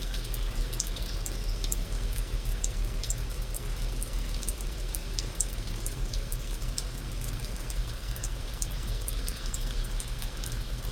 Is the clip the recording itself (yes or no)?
no